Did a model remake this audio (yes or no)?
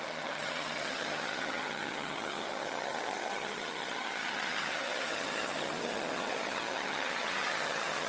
yes